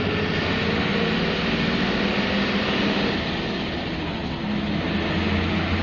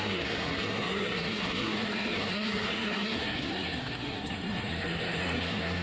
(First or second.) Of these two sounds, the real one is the first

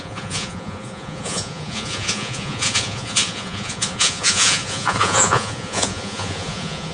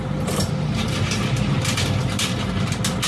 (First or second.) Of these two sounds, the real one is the second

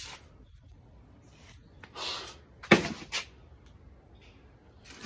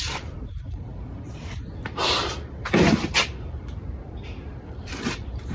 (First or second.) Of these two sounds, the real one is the first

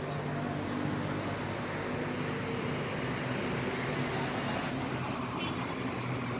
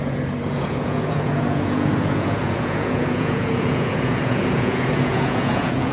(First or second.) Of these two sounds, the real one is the first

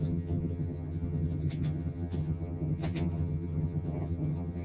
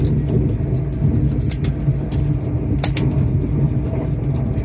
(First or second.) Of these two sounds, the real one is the second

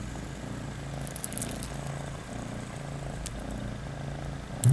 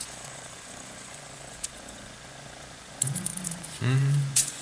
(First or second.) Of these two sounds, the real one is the first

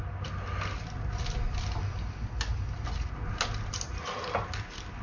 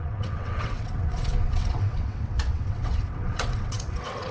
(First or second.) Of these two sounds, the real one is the first